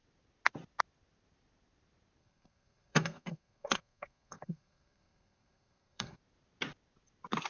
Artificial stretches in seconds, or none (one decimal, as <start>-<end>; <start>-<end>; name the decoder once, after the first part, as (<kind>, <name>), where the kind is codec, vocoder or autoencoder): 2.2-6.2 (codec, SNAC)